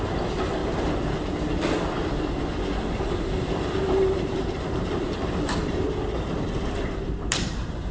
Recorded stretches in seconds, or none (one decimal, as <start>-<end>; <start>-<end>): 0.6-3.0